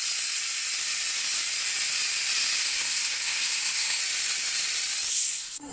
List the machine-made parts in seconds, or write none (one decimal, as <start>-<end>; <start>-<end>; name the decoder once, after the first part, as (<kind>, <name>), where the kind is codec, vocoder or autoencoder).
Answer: 2.6-4.0 (codec, SNAC); 5.1-5.7